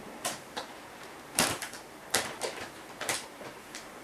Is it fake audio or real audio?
fake